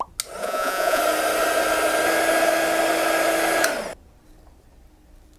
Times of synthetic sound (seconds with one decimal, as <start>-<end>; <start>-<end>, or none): 0.4-1.0